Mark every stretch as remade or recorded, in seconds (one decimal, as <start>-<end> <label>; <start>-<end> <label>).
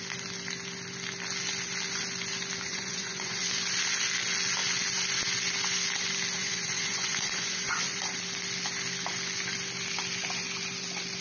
0.0-2.7 recorded; 2.7-3.4 remade; 3.4-6.4 recorded; 6.4-8.0 remade; 8.0-11.2 recorded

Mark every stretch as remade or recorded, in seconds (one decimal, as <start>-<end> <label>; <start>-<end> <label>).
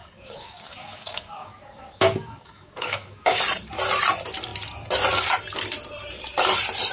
0.0-3.4 remade; 3.4-6.9 recorded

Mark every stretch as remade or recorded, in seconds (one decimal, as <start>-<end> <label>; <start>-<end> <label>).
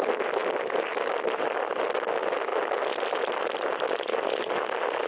0.0-5.1 recorded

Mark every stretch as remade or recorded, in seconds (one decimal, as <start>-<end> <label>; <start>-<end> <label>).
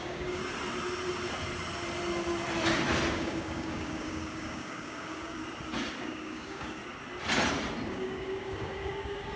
0.0-0.4 remade; 0.4-3.1 recorded; 3.1-5.4 remade; 5.4-6.0 recorded; 6.0-6.8 remade; 6.8-7.9 recorded; 7.9-9.4 remade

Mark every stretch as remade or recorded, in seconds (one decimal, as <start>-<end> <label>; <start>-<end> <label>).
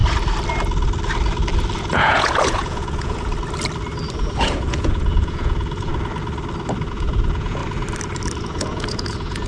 0.0-1.8 recorded; 1.8-3.3 remade; 3.3-4.2 recorded; 4.2-5.9 remade; 5.9-6.9 recorded; 6.9-7.6 remade; 7.6-8.4 recorded; 8.4-9.5 remade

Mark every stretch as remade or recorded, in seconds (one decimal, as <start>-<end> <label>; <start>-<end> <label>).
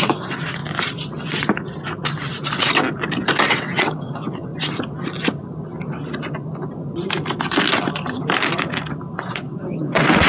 0.0-0.6 remade; 0.6-3.5 recorded; 3.5-4.5 remade; 4.5-9.2 recorded; 9.2-10.3 remade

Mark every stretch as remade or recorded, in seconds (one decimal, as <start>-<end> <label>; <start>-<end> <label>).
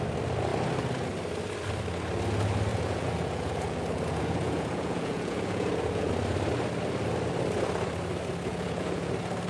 0.0-2.7 recorded; 2.7-6.1 remade; 6.1-8.5 recorded; 8.5-9.1 remade; 9.1-9.5 recorded